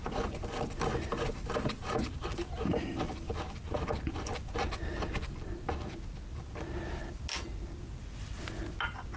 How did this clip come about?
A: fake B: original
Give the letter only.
B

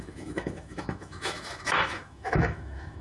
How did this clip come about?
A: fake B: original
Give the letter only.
A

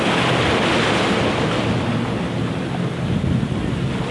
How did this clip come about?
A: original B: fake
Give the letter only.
A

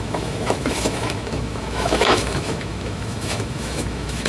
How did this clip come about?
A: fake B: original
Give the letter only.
A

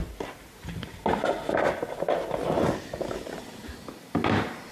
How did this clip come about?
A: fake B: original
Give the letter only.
B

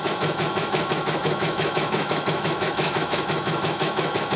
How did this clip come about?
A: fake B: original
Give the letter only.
A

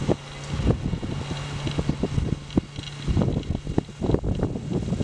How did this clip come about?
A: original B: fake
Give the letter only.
A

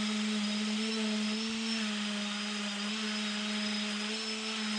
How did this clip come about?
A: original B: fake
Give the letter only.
A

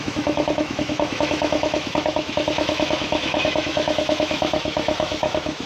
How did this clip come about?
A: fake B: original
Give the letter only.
A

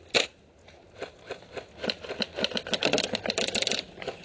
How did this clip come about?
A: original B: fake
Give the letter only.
A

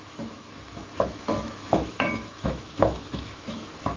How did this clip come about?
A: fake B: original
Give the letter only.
A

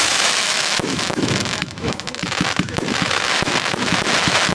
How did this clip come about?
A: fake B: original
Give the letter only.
A